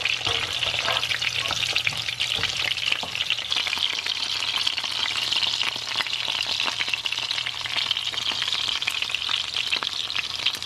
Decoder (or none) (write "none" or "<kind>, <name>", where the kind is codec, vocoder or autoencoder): none